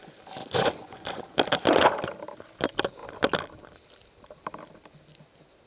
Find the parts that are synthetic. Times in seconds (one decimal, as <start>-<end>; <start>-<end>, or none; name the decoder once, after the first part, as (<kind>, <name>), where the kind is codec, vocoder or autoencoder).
0.4-1.2 (vocoder, Vocos)